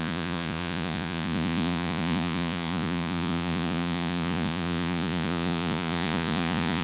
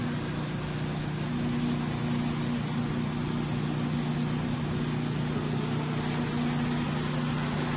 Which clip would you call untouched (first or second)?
second